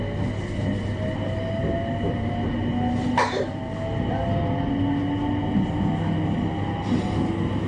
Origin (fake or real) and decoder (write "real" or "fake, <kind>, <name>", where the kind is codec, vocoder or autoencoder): real